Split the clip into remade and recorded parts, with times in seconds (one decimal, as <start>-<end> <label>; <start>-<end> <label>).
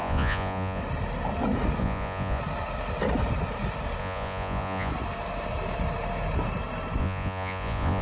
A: 0.0-0.8 remade; 0.8-1.8 recorded; 1.8-2.4 remade; 2.4-4.0 recorded; 4.0-4.9 remade; 4.9-7.0 recorded; 7.0-8.0 remade